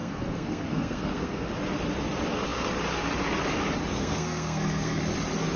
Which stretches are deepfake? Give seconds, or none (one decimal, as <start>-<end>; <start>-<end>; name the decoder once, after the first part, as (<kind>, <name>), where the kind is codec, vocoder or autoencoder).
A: 0.0-1.5 (codec, SNAC); 3.9-5.0